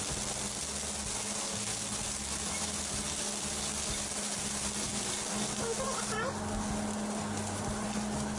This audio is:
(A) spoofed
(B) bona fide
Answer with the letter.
B